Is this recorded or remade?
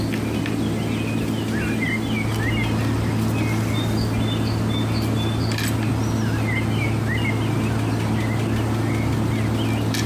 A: recorded